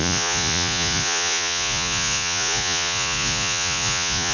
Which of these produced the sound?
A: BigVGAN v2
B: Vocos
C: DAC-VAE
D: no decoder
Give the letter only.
B